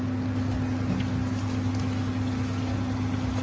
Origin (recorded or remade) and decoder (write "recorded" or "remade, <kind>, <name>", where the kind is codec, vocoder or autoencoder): recorded